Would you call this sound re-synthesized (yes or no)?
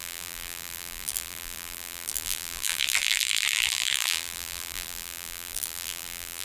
yes